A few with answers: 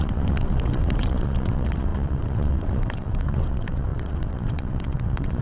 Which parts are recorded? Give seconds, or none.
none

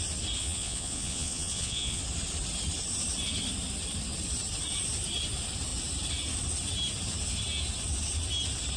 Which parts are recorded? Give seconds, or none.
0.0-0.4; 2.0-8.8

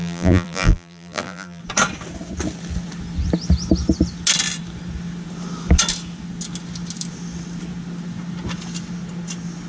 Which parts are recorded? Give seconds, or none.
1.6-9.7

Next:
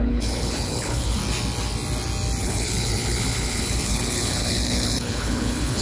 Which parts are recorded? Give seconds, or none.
1.2-2.4

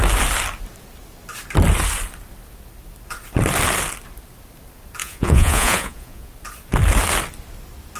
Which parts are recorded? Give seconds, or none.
0.0-5.0; 6.3-8.0

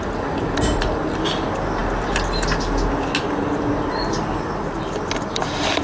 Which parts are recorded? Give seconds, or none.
0.0-5.8

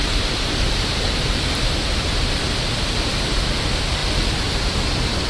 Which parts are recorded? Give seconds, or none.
2.3-5.3

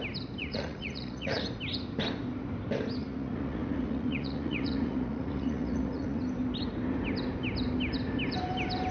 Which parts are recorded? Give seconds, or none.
0.0-0.4; 1.4-3.0; 6.2-8.9